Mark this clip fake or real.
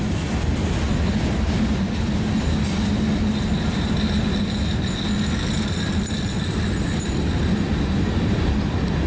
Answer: real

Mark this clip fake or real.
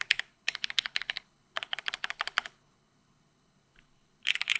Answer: fake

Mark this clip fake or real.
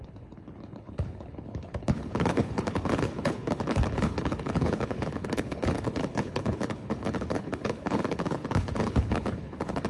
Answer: fake